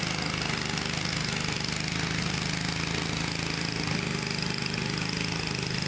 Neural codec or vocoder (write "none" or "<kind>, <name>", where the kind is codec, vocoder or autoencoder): none